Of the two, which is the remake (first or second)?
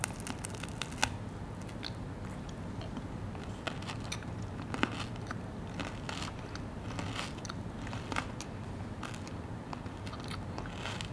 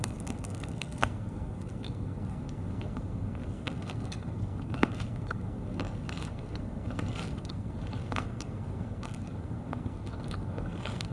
second